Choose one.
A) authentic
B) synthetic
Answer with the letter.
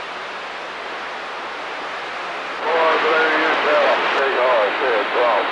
A